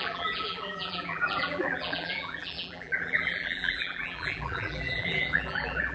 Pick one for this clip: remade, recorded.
remade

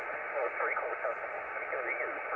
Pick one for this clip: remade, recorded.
recorded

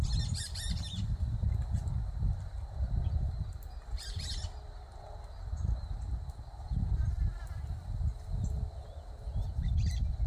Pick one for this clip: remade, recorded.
recorded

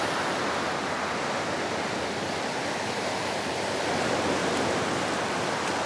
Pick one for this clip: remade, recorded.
recorded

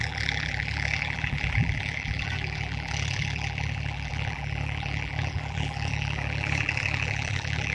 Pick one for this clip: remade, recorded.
remade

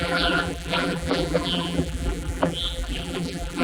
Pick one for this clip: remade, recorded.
remade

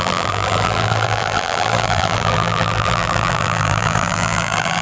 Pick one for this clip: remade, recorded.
remade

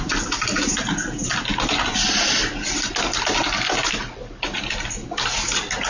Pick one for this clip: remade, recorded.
recorded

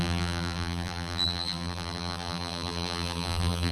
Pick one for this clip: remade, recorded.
remade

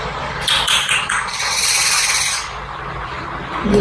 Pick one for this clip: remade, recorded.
remade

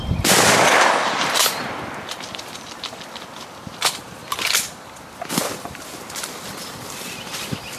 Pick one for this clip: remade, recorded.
remade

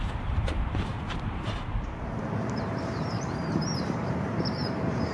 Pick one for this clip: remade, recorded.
remade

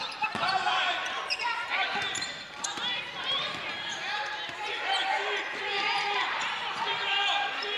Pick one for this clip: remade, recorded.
remade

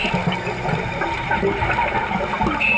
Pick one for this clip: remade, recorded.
recorded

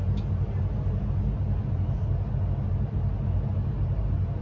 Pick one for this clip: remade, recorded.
recorded